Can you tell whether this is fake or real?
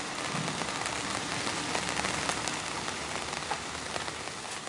real